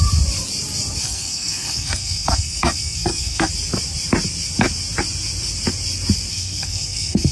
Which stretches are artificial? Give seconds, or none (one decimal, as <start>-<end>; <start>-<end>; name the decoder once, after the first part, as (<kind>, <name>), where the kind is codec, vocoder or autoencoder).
1.0-3.5 (codec, SNAC); 6.3-7.3